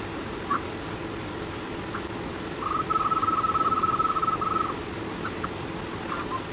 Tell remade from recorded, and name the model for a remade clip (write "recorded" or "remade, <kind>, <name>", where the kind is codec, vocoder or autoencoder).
recorded